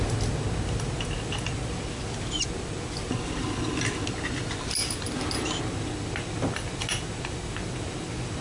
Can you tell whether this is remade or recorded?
recorded